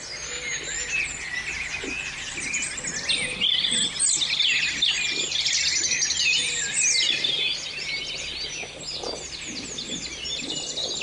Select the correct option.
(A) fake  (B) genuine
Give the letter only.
B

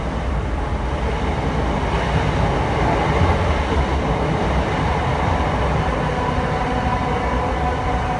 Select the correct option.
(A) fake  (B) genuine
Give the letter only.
B